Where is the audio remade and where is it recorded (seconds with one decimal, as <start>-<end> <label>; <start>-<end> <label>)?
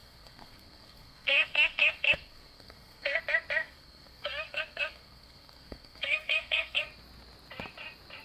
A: 0.0-3.2 remade; 3.2-3.6 recorded; 3.6-6.8 remade; 6.8-8.2 recorded